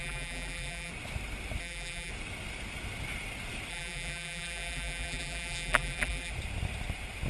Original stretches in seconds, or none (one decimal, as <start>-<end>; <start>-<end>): 0.9-1.6; 2.1-3.7; 6.3-7.3